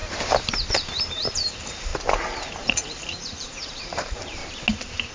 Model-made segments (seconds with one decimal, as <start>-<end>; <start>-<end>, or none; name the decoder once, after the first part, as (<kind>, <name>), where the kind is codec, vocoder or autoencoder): 0.7-1.9 (vocoder, BigVGAN v2); 2.6-4.4